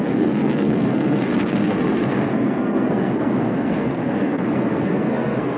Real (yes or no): no